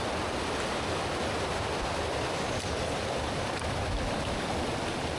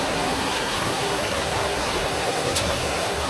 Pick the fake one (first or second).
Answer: second